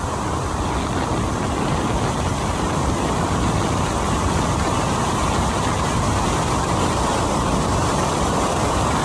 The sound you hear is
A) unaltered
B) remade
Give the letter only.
A